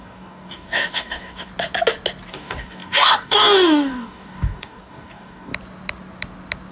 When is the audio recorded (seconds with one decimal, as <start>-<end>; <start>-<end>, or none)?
1.5-2.3; 5.5-6.7